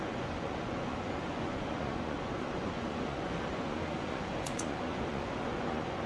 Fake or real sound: fake